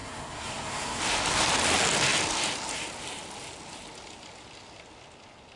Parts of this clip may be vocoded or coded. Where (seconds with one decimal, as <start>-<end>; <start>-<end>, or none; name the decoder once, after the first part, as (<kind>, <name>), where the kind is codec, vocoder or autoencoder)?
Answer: 0.0-1.0 (codec, SNAC)